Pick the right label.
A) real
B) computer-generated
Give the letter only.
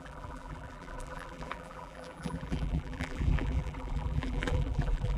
B